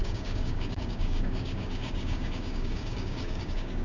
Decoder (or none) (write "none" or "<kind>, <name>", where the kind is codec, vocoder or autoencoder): codec, DAC